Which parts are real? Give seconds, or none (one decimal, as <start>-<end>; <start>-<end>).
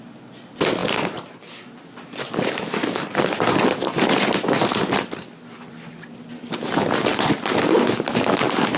0.0-8.8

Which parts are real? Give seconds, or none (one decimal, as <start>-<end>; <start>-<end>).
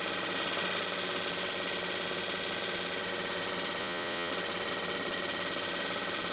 0.0-3.8; 4.3-6.3